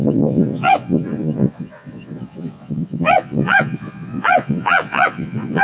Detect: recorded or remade remade